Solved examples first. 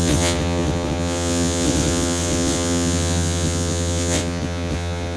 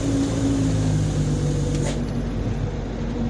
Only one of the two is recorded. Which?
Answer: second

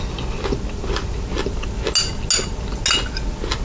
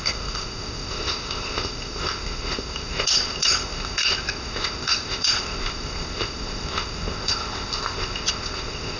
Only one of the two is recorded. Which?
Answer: first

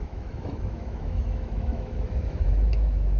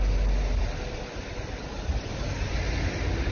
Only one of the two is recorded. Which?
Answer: second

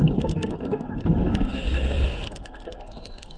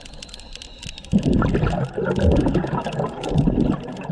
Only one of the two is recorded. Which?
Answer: second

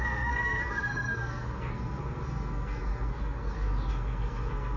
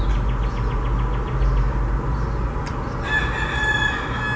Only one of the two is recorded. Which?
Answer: second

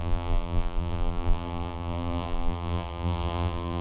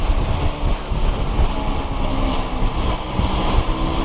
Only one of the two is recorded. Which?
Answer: second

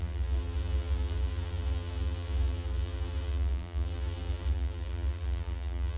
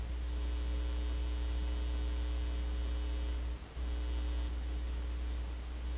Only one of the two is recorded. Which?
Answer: second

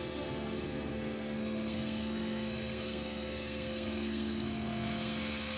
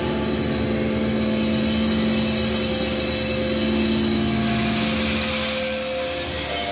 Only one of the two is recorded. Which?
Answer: second